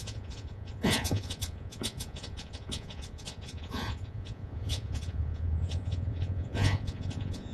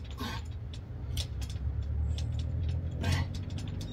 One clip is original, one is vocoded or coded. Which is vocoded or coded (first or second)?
first